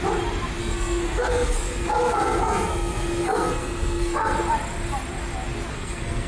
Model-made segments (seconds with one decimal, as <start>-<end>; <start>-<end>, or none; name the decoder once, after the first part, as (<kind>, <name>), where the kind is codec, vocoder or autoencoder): 0.6-4.4 (codec, SNAC); 5.7-6.3